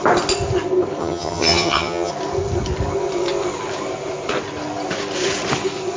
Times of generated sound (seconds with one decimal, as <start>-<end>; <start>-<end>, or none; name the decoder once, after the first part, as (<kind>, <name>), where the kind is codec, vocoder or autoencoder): 1.0-2.1 (vocoder, HiFi-GAN)

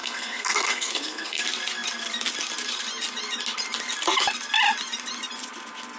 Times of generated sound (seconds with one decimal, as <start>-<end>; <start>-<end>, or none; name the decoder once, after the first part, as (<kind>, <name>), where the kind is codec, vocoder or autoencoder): 0.0-1.4 (codec, SNAC)

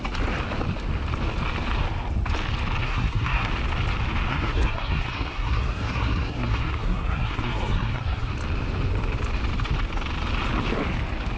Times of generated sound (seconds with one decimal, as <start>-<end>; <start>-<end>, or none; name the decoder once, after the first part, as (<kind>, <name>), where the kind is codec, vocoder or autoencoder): 2.8-3.5 (codec, SNAC); 4.3-8.3

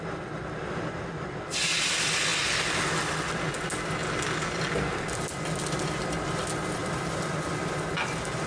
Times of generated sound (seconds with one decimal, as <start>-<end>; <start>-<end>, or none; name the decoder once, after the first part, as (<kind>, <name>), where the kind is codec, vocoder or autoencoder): none

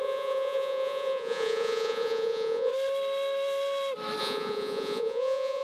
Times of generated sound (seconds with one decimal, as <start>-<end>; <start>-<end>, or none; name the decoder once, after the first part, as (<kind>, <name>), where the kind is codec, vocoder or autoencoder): 0.0-2.7 (vocoder, Vocos); 4.2-5.6

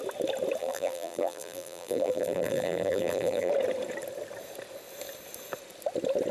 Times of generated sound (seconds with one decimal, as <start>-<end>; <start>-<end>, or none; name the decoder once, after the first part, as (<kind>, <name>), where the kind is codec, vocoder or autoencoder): 0.6-3.5 (vocoder, BigVGAN v2)